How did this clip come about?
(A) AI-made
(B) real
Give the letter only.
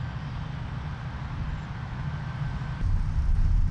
B